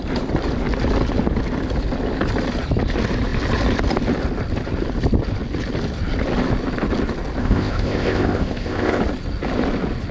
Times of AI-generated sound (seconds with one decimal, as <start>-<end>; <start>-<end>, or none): 7.4-9.0